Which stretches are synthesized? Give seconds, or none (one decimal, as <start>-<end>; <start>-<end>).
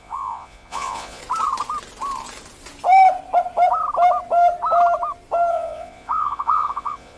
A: 0.0-1.2; 5.5-7.2